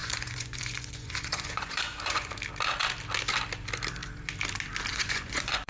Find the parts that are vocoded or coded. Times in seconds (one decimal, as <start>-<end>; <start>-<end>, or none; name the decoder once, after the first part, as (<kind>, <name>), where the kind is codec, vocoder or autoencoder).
0.0-2.3 (vocoder, Vocos); 4.9-5.7